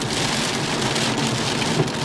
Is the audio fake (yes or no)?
yes